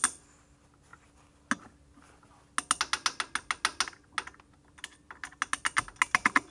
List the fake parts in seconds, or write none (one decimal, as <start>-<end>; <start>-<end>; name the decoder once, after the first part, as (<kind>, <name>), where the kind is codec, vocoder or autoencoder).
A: none